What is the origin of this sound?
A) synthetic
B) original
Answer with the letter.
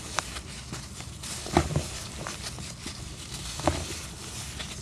B